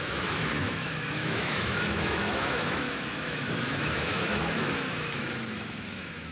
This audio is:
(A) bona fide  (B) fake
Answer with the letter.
B